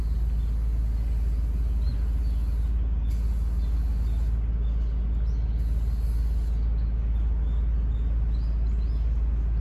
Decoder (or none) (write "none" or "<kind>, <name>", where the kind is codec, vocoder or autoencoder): none